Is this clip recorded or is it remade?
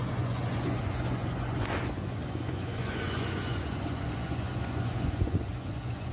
remade